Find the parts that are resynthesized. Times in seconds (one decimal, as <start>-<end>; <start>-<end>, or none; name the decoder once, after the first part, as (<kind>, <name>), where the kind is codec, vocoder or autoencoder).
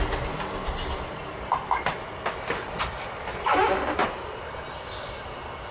none